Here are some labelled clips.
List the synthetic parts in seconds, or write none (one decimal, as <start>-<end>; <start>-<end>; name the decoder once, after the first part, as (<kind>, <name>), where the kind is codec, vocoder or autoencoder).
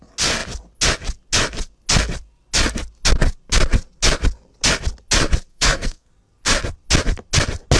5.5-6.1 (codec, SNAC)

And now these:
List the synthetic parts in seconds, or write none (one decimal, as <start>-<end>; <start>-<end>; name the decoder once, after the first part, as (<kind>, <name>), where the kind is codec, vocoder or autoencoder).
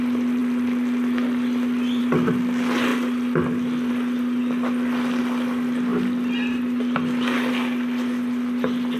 none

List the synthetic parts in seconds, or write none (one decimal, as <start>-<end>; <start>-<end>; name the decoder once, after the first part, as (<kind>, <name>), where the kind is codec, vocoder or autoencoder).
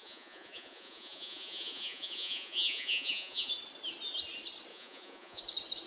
0.0-3.5 (vocoder, Vocos); 4.7-5.4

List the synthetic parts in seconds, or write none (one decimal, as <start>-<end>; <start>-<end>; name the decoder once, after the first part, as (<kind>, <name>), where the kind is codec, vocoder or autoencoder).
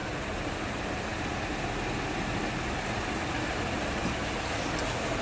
none